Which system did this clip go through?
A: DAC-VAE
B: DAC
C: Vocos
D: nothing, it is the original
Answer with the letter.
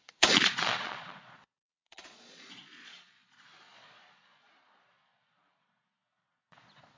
C